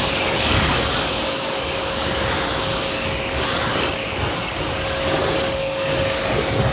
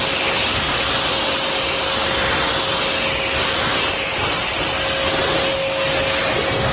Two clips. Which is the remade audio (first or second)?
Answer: first